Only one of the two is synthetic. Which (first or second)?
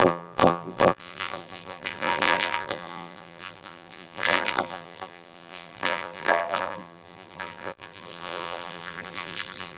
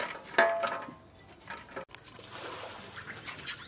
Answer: first